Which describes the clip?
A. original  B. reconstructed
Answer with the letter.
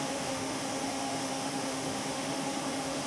B